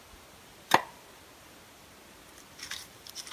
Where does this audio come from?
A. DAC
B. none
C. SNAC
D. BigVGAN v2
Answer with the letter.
B